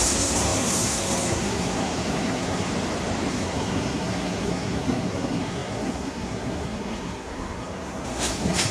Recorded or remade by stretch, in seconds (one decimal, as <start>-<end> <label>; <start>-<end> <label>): 0.0-2.7 remade; 2.7-3.3 recorded; 3.3-8.7 remade